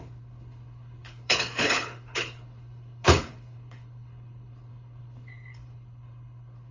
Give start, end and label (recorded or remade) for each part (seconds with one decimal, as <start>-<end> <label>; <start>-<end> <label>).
0.0-6.7 remade